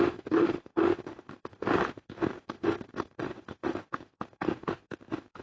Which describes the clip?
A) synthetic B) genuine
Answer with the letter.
A